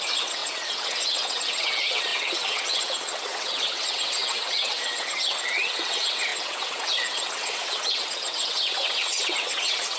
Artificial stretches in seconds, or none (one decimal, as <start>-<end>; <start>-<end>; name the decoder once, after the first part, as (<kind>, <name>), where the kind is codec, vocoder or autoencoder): 0.0-10.0 (vocoder, WaveNeXt)